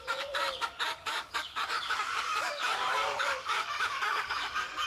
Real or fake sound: fake